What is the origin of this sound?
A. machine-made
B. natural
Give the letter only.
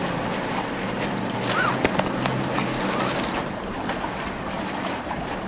B